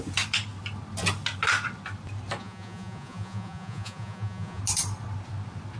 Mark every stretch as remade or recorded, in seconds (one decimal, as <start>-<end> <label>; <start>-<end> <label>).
0.0-2.4 recorded; 2.4-4.6 remade; 4.6-5.8 recorded

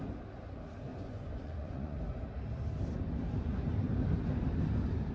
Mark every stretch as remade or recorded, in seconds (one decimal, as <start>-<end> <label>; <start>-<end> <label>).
0.0-0.9 recorded; 0.9-2.0 remade; 2.0-5.1 recorded

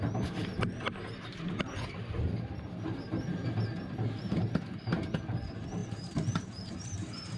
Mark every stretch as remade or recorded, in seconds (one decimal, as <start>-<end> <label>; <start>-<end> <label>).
0.0-7.4 remade

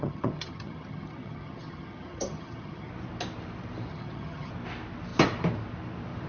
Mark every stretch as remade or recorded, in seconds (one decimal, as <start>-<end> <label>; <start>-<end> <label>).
0.0-2.9 remade; 2.9-3.9 recorded; 3.9-4.5 remade; 4.5-6.3 recorded

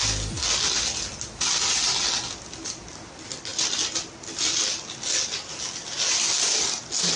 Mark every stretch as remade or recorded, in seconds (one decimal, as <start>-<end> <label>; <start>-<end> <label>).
0.0-7.2 recorded